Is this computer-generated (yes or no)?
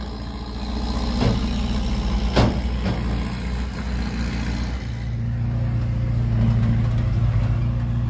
no